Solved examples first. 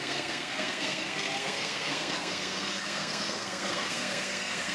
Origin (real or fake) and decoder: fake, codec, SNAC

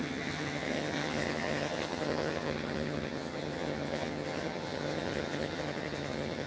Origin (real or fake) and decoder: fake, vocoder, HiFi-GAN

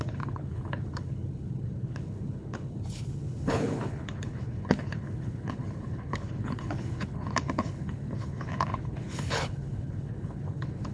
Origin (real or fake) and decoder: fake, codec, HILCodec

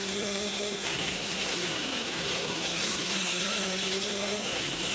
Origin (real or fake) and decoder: fake, codec, SNAC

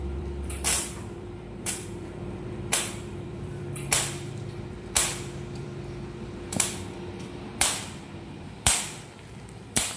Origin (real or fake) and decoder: fake, vocoder, BigVGAN v2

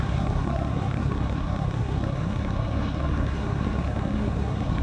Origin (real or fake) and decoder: fake, codec, SNAC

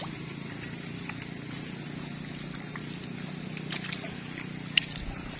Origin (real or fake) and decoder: real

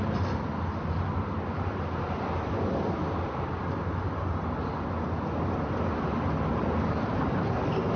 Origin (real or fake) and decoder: real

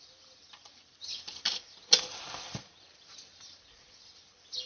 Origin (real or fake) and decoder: real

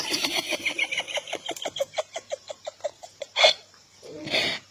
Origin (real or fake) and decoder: fake, vocoder, BigVGAN v2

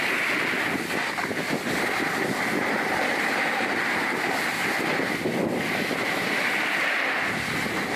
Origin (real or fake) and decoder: real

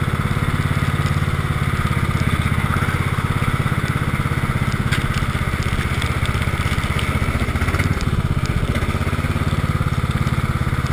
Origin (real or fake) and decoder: real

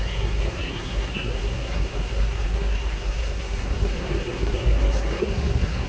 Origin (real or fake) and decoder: fake, codec, SNAC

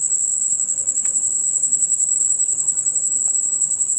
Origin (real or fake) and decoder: fake, codec, HILCodec